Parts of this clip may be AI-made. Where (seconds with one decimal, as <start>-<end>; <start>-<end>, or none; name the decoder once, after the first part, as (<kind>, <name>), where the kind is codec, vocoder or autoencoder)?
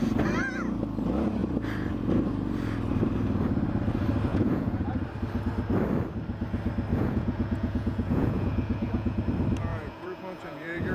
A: 4.3-5.0 (vocoder, Vocos); 6.9-9.2; 9.7-10.9